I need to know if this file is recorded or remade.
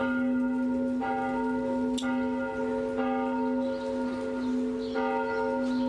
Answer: recorded